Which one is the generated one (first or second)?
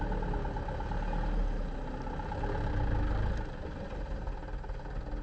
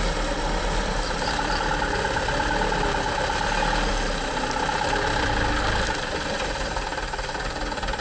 second